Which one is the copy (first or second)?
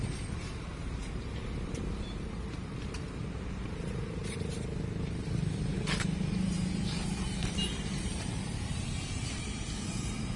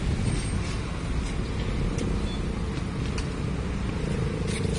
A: first